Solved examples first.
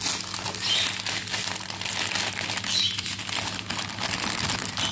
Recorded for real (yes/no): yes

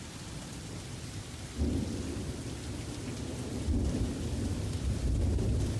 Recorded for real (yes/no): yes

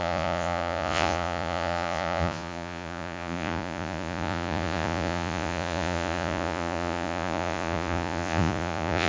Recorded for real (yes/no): no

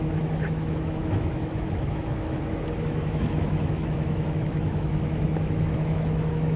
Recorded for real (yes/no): no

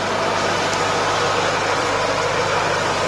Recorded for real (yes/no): yes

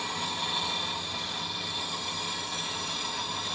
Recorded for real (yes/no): yes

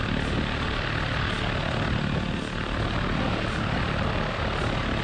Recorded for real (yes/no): yes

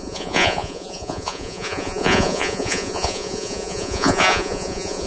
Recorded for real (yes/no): no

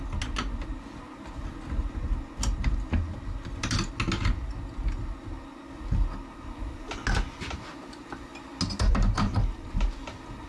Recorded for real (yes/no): yes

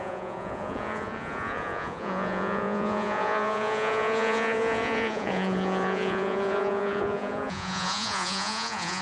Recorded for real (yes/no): no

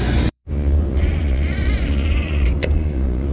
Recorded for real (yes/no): no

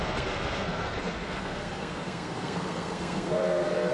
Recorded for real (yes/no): no